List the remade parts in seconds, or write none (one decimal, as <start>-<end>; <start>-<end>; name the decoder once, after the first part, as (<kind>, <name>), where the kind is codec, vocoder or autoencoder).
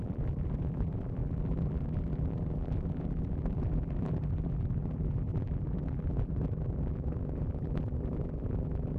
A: 0.0-9.0 (vocoder, BigVGAN v2)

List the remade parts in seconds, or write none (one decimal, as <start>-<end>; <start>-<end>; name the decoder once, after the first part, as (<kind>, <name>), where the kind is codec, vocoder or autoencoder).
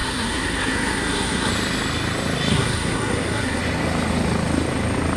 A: 0.0-1.5 (codec, SNAC); 2.5-3.6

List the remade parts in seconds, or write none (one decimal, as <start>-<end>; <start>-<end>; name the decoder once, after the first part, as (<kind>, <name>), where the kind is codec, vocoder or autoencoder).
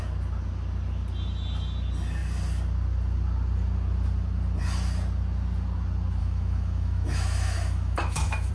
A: 6.2-8.5 (autoencoder, DAC-VAE)